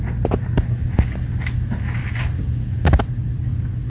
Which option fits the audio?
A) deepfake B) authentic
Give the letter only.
B